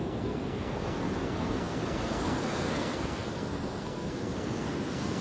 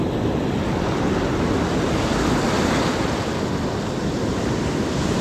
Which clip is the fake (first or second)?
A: first